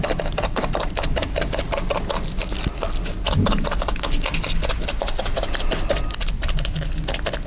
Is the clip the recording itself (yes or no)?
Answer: yes